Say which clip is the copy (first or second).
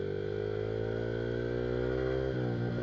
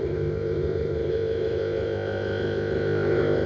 second